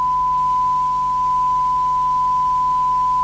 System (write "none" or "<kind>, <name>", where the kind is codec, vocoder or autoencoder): none